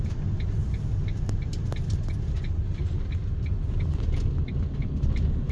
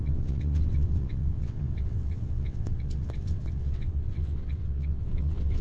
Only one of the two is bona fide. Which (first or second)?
first